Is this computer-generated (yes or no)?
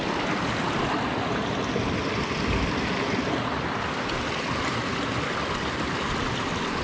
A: no